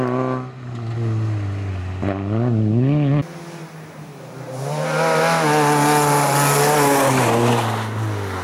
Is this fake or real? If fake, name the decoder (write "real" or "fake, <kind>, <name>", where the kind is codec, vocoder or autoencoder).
real